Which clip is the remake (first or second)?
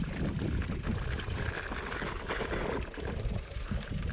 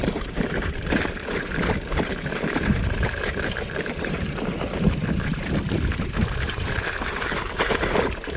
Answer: second